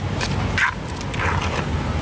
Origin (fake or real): real